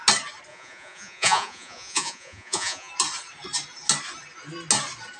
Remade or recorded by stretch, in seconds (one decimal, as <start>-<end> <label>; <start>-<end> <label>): 0.0-0.5 recorded; 0.5-2.9 remade; 2.9-5.2 recorded